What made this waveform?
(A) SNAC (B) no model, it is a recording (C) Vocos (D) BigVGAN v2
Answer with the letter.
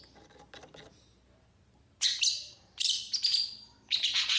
B